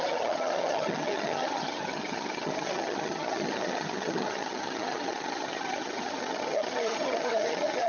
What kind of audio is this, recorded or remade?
remade